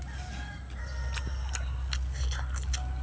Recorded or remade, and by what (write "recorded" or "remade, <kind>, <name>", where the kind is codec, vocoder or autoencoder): recorded